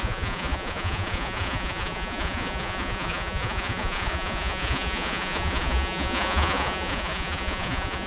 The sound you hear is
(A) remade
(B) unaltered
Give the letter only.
A